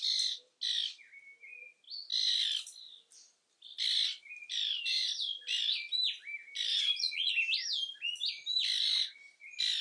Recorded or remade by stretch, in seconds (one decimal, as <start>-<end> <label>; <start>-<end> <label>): 0.0-4.9 recorded; 4.9-5.4 remade; 5.4-6.7 recorded; 6.7-7.3 remade; 7.3-9.8 recorded